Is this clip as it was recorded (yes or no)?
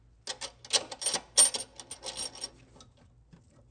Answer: yes